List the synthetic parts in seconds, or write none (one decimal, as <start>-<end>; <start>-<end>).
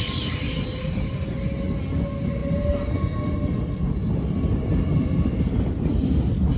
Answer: none